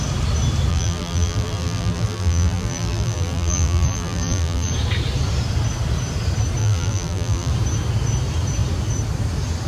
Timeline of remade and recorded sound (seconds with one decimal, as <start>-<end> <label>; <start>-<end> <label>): 0.0-0.7 recorded; 0.7-4.7 remade; 4.7-6.6 recorded; 6.6-7.5 remade; 7.5-9.7 recorded